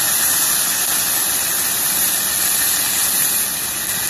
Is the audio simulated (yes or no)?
no